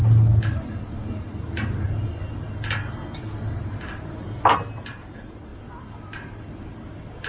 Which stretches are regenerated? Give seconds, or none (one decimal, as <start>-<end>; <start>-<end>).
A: 1.7-2.1; 5.1-7.3